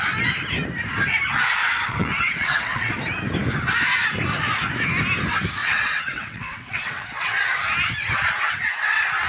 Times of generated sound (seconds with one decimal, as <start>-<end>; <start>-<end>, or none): 1.6-2.9; 5.6-7.4